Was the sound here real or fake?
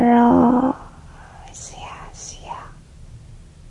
real